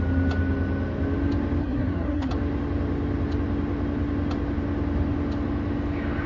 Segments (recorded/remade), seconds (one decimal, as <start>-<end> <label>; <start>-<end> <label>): 0.0-1.6 recorded; 1.6-2.3 remade; 2.3-6.3 recorded